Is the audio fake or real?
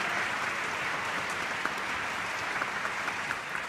real